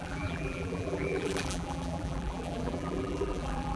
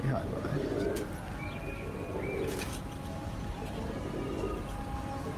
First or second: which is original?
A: second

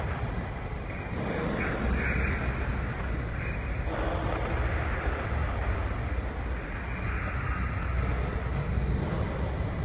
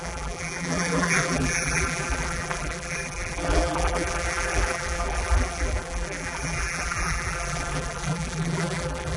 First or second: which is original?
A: first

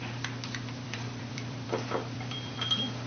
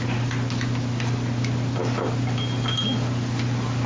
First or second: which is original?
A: second